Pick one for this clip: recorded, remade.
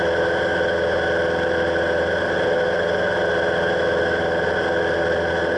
recorded